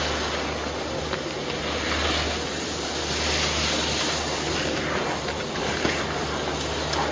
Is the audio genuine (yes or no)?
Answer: yes